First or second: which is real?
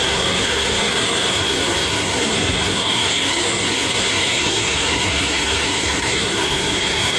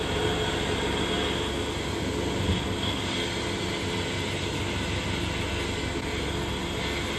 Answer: second